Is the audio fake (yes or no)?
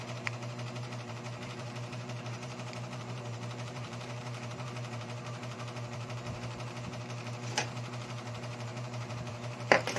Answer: yes